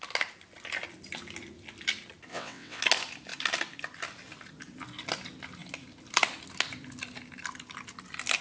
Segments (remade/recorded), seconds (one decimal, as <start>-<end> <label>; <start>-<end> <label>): 0.0-2.3 recorded; 2.3-2.8 remade; 2.8-8.4 recorded